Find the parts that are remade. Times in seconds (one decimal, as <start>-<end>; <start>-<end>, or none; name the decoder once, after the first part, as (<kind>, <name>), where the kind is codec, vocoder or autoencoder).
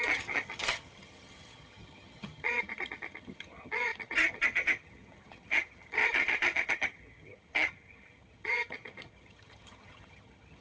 0.0-10.6 (vocoder, HiFi-GAN)